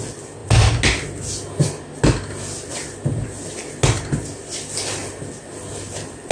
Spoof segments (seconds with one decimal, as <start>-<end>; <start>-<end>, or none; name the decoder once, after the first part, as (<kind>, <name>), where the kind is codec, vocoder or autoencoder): none